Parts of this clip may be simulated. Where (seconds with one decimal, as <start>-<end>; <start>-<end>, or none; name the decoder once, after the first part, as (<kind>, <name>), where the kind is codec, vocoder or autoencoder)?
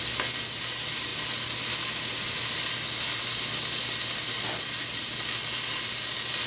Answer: none